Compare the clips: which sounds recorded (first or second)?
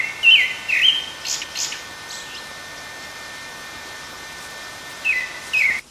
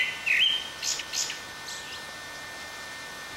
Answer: second